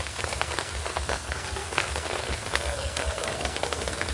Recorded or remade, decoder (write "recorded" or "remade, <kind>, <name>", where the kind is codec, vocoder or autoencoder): remade, codec, SNAC